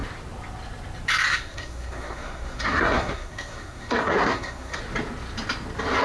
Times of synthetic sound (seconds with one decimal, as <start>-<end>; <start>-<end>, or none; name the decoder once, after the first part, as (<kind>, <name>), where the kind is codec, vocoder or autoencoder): 1.3-4.8 (codec, SNAC)